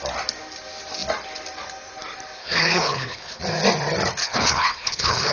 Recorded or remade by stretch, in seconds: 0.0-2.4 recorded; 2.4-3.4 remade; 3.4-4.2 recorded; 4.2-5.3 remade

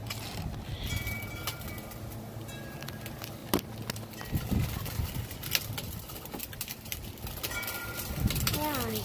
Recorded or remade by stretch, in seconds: 0.0-9.0 recorded

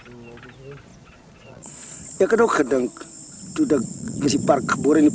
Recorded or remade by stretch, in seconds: 0.0-0.9 recorded; 0.9-2.0 remade; 2.0-3.8 recorded; 3.8-4.4 remade; 4.4-5.1 recorded

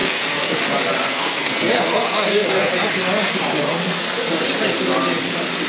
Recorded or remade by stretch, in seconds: 0.0-0.6 remade; 0.6-1.1 recorded; 1.1-2.7 remade; 2.7-3.8 recorded; 3.8-4.3 remade; 4.3-5.7 recorded

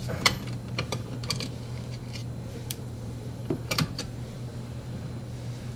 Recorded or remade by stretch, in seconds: 0.0-1.3 remade; 1.3-2.2 recorded; 2.2-4.4 remade; 4.4-5.8 recorded